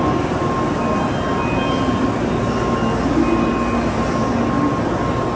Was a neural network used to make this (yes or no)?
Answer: no